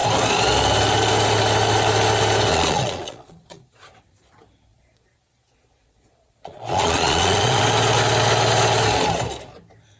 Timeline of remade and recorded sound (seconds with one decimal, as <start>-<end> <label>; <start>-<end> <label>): 0.0-2.5 recorded; 2.5-3.9 remade; 3.9-4.7 recorded; 4.7-7.6 remade; 7.6-10.0 recorded